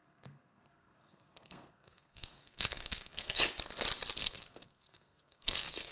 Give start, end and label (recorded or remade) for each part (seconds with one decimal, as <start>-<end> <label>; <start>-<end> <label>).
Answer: 0.0-3.4 remade; 3.4-4.2 recorded; 4.2-5.9 remade